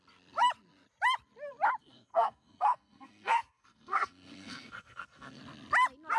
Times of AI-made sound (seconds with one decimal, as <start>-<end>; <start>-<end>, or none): 1.8-5.4

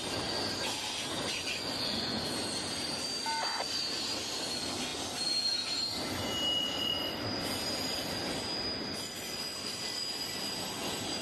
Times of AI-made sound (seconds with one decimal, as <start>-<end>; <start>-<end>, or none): 1.4-2.2